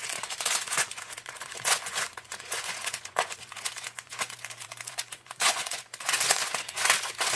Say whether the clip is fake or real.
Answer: fake